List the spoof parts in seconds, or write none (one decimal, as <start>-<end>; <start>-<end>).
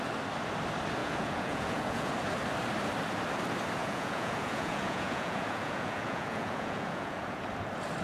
1.0-2.1; 3.8-7.4